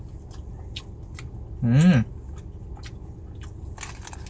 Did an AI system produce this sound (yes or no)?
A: no